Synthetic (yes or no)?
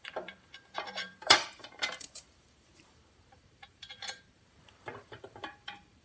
yes